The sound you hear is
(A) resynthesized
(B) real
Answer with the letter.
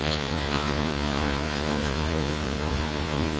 A